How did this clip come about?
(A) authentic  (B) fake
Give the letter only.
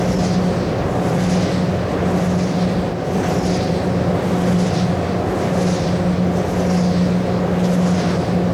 A